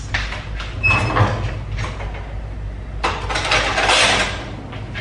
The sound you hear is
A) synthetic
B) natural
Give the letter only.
B